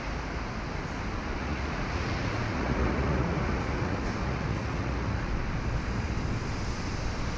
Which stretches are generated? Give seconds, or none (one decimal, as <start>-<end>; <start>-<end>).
1.4-5.3